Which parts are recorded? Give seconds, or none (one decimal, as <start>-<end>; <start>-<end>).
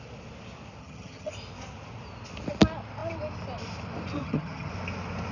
0.0-0.8; 1.3-4.2; 4.7-5.3